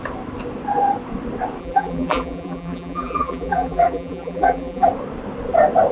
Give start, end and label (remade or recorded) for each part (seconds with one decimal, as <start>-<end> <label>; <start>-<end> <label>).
0.0-1.6 recorded; 1.6-4.9 remade; 4.9-5.9 recorded